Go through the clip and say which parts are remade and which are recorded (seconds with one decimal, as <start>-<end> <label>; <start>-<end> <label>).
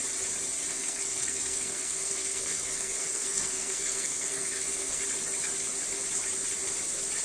0.0-0.7 recorded; 0.7-5.0 remade; 5.0-7.2 recorded